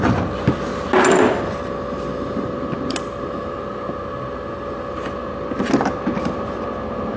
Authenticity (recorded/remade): recorded